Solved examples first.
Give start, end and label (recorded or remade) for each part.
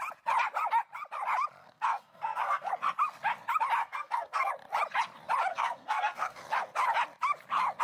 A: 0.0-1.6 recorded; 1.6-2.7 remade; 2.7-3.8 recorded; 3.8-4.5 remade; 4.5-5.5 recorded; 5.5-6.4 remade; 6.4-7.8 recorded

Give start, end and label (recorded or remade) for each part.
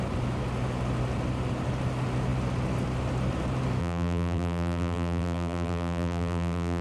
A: 0.0-3.8 recorded; 3.8-6.8 remade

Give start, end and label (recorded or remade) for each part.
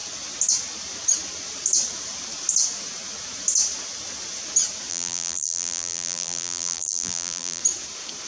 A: 0.0-4.9 recorded; 4.9-7.6 remade; 7.6-8.3 recorded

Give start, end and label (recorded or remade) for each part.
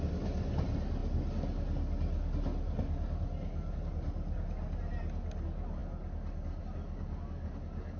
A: 0.0-8.0 recorded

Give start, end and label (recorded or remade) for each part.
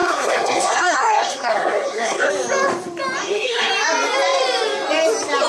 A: 0.0-2.3 remade; 2.3-3.2 recorded; 3.2-3.7 remade; 3.7-5.5 recorded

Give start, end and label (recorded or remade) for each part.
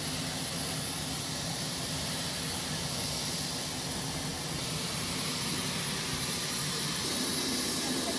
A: 0.0-8.2 recorded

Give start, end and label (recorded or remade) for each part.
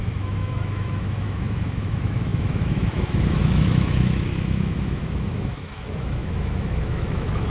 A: 0.0-7.5 remade